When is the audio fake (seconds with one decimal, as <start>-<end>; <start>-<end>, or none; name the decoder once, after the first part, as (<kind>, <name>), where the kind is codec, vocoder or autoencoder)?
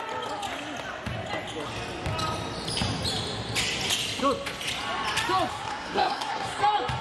5.5-6.6 (codec, SNAC)